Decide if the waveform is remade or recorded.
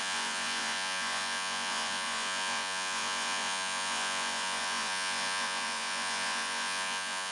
remade